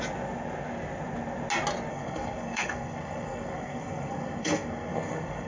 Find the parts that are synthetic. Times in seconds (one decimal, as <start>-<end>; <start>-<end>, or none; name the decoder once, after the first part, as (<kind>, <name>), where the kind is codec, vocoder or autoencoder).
1.9-5.5 (codec, SNAC)